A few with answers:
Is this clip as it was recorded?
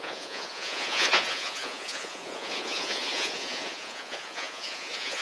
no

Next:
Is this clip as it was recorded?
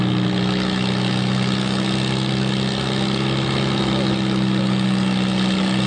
yes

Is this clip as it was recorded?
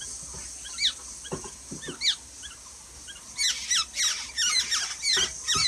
yes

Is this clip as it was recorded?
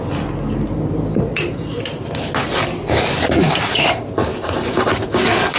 yes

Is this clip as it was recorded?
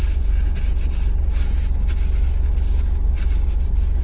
yes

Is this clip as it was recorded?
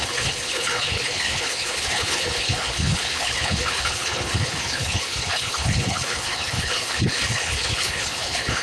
no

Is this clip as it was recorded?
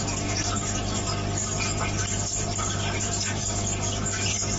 yes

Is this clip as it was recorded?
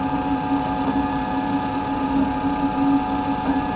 yes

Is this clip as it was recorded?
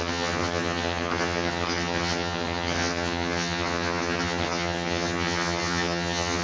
no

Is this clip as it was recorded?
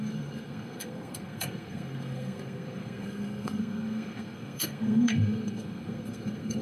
no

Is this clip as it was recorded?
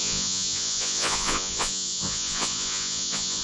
no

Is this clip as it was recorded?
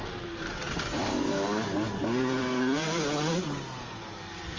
no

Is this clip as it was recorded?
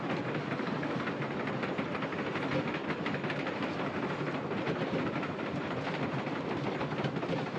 yes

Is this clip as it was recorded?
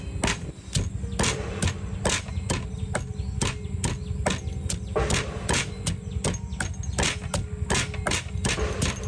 yes